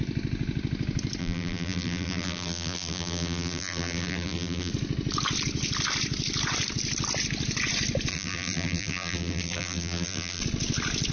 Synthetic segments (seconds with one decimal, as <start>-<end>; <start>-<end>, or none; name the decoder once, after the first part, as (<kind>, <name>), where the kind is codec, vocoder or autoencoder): 1.2-4.7 (vocoder, BigVGAN v2); 8.1-10.4